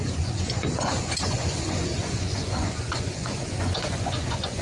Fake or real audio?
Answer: fake